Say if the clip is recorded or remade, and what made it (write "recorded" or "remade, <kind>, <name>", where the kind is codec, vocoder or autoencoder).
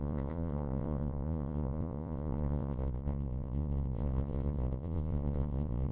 remade, vocoder, Vocos